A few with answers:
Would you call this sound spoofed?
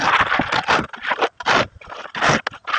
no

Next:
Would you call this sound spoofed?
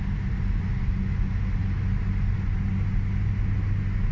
no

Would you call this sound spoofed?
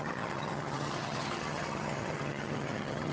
yes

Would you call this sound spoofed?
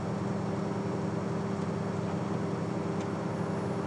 no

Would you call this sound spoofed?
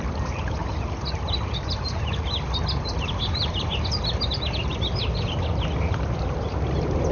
no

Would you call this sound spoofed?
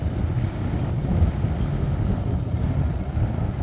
no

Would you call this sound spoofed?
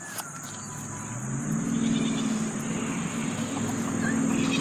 no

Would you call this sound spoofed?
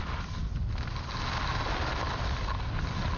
no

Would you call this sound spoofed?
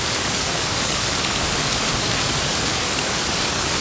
yes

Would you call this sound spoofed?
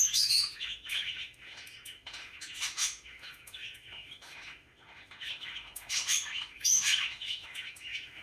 yes